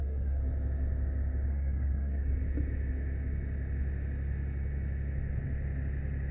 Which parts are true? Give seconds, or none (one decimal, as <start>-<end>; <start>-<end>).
0.4-1.5; 2.2-6.3